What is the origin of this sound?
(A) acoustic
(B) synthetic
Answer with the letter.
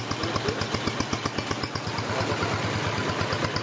A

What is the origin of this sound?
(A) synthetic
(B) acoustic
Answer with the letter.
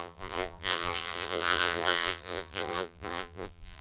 A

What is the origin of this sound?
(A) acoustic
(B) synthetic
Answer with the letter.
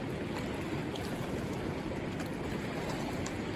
A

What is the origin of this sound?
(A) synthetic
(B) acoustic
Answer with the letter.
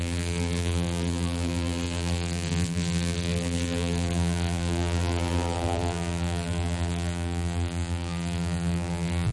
A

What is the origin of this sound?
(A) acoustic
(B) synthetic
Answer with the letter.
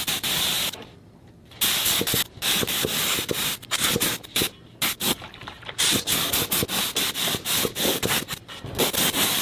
A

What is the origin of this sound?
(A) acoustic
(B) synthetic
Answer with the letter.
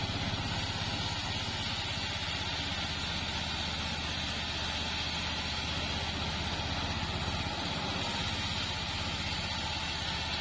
A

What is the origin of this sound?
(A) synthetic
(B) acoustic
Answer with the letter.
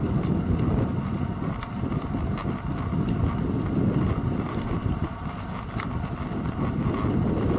B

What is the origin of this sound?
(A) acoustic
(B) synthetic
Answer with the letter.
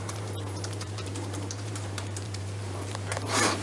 B